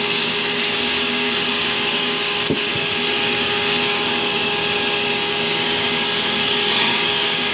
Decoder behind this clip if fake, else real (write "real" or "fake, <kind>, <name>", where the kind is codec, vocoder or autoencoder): fake, codec, DAC